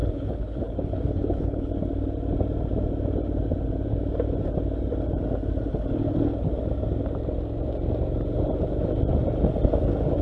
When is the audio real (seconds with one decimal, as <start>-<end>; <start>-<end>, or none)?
1.7-10.2